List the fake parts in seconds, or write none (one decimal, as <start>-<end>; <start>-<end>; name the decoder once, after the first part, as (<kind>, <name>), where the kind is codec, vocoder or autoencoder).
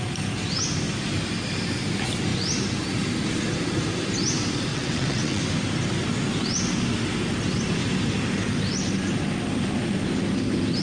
4.7-5.4 (vocoder, WaveNeXt)